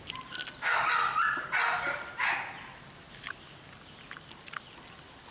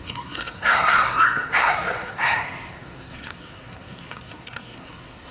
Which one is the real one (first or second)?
first